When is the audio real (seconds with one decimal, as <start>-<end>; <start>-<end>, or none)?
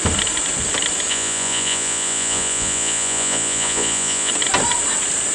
0.0-1.1; 4.3-5.3